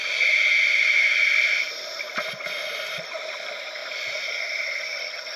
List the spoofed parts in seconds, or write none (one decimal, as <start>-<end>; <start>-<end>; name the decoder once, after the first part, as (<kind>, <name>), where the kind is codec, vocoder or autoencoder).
none